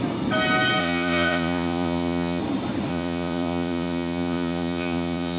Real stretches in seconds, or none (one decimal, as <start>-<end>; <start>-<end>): 0.0-0.8; 2.4-2.9